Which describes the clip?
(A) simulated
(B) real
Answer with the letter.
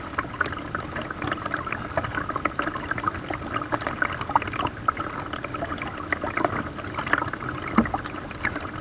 B